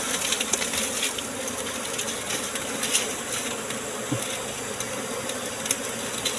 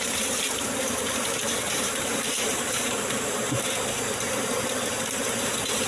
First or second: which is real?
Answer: first